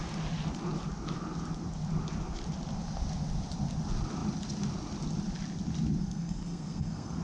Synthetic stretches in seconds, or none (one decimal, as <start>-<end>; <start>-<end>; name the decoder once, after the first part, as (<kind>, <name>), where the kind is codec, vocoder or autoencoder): 6.0-7.2 (codec, SNAC)